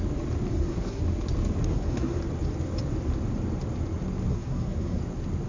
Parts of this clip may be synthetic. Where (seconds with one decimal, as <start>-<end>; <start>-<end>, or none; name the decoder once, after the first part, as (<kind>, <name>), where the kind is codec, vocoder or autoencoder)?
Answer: 0.5-1.0 (codec, SNAC); 1.7-2.2; 4.3-5.0